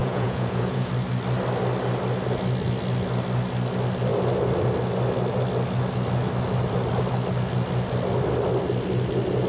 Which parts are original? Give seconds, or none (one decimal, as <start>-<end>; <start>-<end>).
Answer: 0.9-9.5